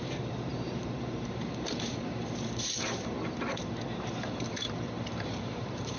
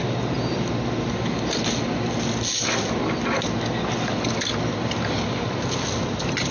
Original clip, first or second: second